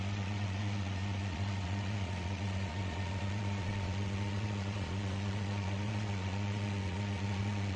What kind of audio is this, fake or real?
fake